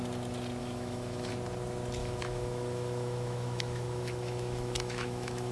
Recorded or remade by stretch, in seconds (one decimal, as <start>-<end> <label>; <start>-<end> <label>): 0.0-0.6 recorded; 0.6-1.3 remade; 1.3-2.0 recorded; 2.0-5.5 remade